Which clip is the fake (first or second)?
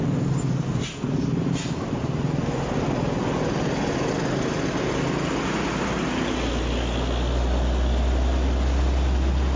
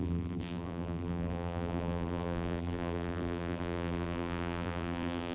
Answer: second